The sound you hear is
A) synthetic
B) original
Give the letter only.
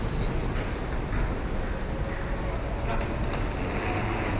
B